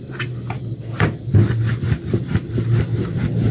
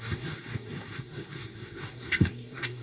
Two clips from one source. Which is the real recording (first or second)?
first